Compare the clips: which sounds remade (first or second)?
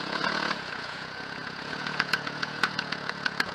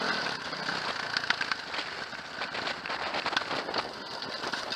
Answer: first